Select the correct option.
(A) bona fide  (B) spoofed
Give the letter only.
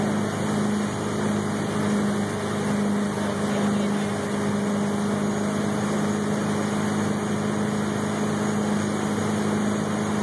A